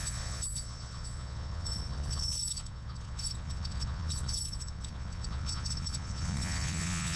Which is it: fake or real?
fake